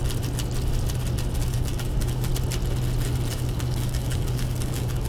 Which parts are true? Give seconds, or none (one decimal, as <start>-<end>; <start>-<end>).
0.0-1.4; 2.3-3.3